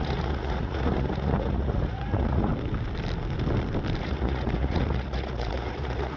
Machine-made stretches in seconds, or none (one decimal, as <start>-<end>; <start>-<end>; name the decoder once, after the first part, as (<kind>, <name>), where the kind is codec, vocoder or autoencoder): 0.0-2.5 (vocoder, Vocos); 4.0-6.2